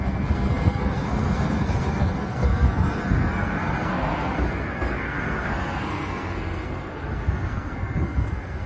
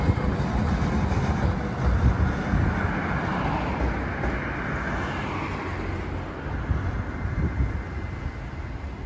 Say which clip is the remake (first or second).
first